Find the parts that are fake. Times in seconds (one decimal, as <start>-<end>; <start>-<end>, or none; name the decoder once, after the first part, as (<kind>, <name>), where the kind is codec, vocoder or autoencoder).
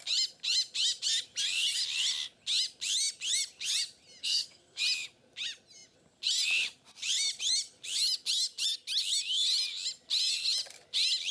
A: 4.2-4.8 (codec, SNAC)